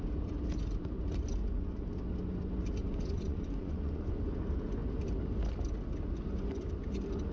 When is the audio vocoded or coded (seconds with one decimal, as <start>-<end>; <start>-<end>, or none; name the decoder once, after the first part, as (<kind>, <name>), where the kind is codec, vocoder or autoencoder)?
1.4-1.9 (vocoder, Vocos); 2.8-4.3